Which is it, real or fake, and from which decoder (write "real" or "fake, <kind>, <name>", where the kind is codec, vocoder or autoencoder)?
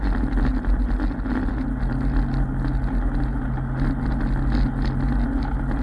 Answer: real